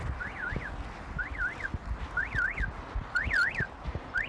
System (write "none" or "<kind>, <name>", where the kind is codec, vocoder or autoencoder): none